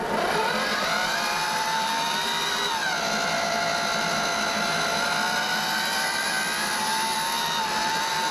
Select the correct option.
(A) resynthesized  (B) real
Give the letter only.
B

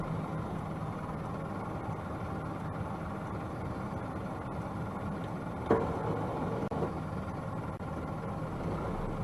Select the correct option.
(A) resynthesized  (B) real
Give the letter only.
B